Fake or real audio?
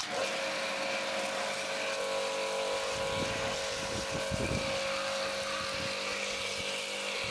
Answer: real